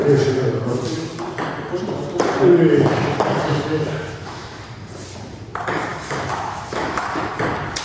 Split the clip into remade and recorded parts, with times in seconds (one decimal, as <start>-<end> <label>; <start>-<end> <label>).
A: 0.0-3.5 recorded; 3.5-4.6 remade; 4.6-5.9 recorded; 5.9-7.3 remade; 7.3-7.8 recorded